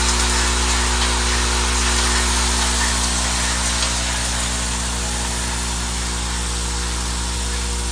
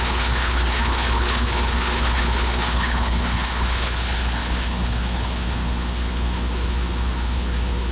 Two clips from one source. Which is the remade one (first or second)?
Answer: second